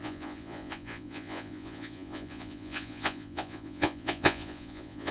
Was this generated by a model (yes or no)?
yes